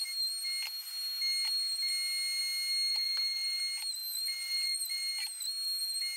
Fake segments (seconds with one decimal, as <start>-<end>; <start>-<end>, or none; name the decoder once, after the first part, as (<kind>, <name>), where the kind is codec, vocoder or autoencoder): 2.9-3.6 (vocoder, BigVGAN v2); 4.0-5.1